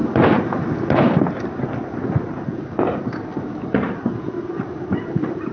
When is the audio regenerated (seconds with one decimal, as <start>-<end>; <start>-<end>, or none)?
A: none